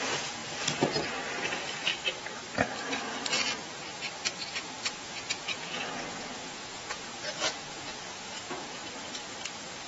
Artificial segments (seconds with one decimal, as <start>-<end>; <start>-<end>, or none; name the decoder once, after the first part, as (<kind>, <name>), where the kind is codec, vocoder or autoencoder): 0.0-0.4 (vocoder, Vocos); 1.5-1.9; 4.3-8.8; 9.5-9.9